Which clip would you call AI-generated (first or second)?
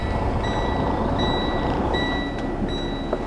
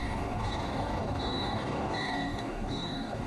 second